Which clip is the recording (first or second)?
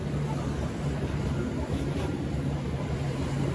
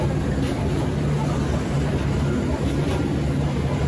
second